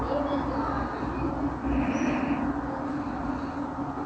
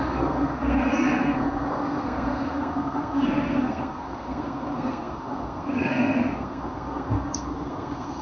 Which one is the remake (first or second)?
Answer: second